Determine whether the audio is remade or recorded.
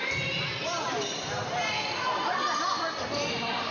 recorded